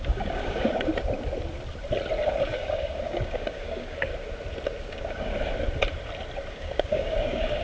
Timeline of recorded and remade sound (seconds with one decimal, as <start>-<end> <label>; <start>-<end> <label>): 0.0-0.9 remade; 0.9-2.3 recorded; 2.3-4.1 remade; 4.1-4.8 recorded; 4.8-5.3 remade; 5.3-6.5 recorded; 6.5-7.6 remade